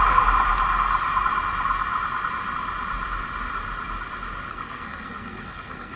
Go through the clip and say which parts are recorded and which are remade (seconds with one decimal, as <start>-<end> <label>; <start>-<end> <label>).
0.0-4.5 recorded; 4.5-6.0 remade